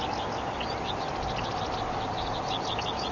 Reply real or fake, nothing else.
real